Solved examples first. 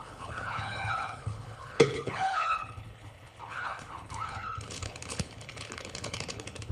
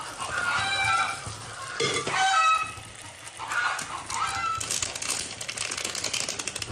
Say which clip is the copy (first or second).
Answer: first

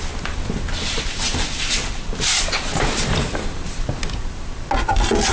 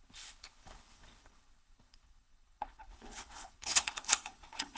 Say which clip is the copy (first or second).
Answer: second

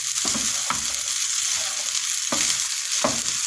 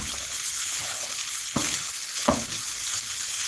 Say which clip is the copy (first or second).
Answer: second